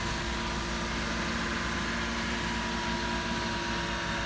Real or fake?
real